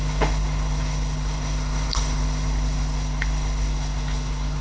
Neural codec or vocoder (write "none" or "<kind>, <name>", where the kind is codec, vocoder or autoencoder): codec, HILCodec